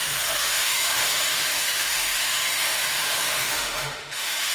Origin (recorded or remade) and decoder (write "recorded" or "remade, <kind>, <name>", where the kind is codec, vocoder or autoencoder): remade, autoencoder, DAC-VAE